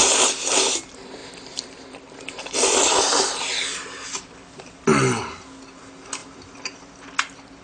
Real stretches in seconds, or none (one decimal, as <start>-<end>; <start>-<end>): 0.0-1.2; 5.2-7.6